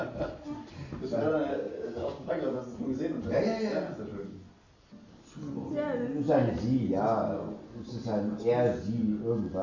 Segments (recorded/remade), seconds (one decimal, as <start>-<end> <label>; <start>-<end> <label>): 0.0-1.5 recorded; 1.5-2.3 remade; 2.3-9.6 recorded